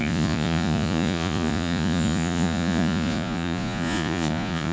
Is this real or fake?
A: fake